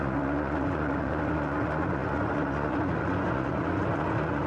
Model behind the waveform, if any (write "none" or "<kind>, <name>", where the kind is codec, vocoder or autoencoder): vocoder, Vocos